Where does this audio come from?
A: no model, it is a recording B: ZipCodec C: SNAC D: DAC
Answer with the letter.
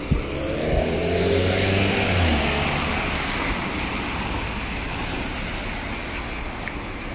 A